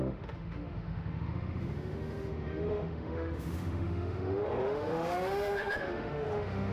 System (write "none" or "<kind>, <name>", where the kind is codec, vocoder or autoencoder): autoencoder, DAC-VAE